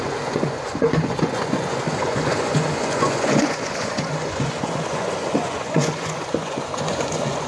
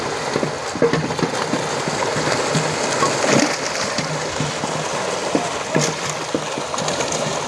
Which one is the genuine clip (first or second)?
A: second